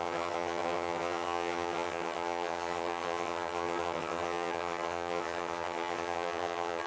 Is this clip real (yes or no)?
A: no